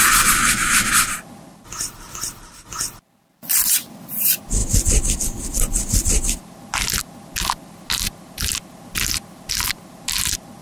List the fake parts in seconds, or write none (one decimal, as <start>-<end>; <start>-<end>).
none